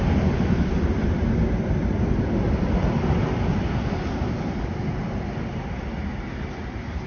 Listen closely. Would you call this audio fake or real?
real